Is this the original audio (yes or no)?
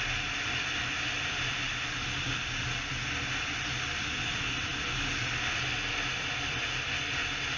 yes